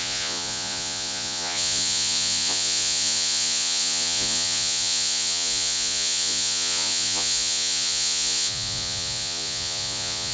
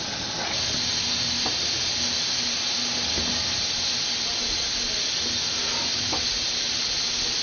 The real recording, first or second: second